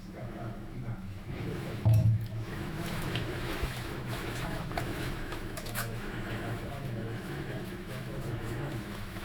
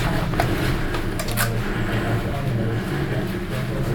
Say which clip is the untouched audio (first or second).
second